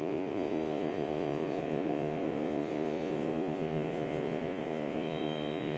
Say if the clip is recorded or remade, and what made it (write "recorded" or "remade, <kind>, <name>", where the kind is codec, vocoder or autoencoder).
remade, vocoder, Vocos